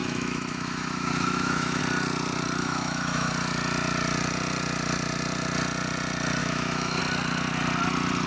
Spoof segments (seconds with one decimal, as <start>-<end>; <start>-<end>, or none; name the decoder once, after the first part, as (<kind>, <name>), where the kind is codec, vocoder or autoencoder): 0.0-1.8 (autoencoder, DAC-VAE); 2.6-3.3; 6.4-7.0